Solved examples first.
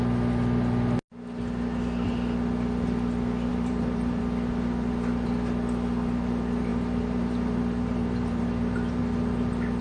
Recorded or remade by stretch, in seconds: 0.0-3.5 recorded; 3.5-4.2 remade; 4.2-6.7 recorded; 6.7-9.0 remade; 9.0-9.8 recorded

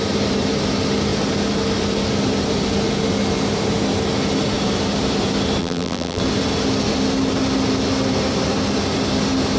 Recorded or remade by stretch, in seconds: 0.0-5.6 recorded; 5.6-6.2 remade; 6.2-9.6 recorded

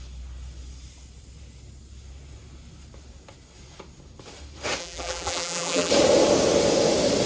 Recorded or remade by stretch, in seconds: 0.0-4.8 recorded; 4.8-5.9 remade; 5.9-7.3 recorded

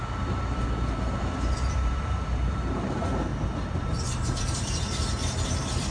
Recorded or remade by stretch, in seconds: 0.0-3.3 remade; 3.3-3.8 recorded; 3.8-5.9 remade

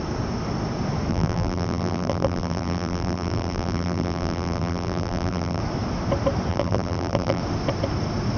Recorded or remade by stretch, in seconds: 0.0-1.1 recorded; 1.1-5.6 remade; 5.6-6.5 recorded; 6.5-7.4 remade; 7.4-8.4 recorded

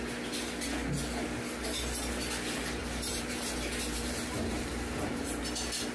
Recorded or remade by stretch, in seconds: 0.0-2.8 recorded; 2.8-5.4 remade; 5.4-5.9 recorded

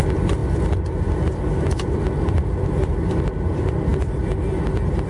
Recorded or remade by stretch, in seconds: 0.0-5.1 recorded

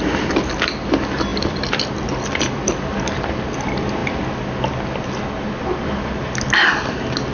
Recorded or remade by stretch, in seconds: 0.0-1.3 recorded; 1.3-1.9 remade; 1.9-7.3 recorded